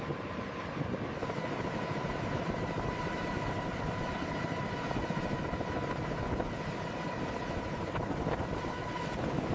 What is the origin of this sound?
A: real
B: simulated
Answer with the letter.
A